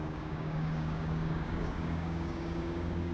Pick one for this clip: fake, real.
fake